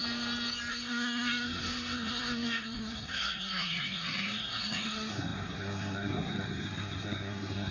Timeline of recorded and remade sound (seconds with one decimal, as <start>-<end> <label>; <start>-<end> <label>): 0.0-0.7 recorded; 0.7-7.7 remade